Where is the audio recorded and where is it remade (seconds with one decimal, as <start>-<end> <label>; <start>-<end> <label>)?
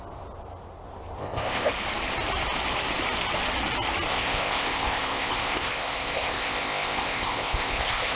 0.0-1.2 recorded; 1.2-1.7 remade; 1.7-4.1 recorded; 4.1-8.2 remade